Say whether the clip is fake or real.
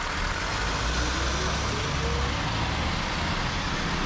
real